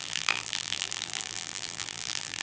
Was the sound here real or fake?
fake